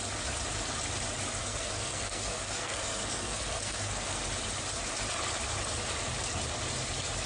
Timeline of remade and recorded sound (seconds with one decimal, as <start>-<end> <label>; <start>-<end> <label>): 0.0-1.4 recorded; 1.4-4.2 remade; 4.2-7.3 recorded